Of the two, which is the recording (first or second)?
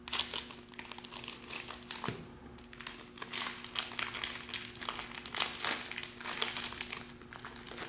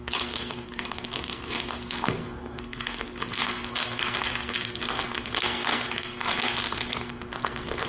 first